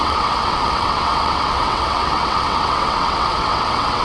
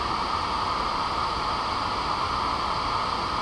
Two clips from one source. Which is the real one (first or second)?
second